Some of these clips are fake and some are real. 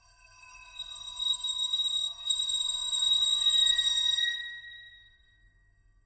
fake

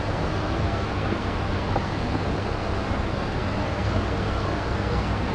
fake